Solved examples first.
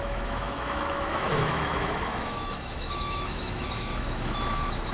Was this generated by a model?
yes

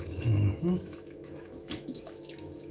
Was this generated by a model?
yes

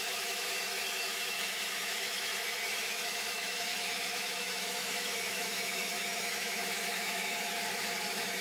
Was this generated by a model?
yes